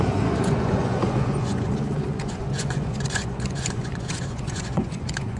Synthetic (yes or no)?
yes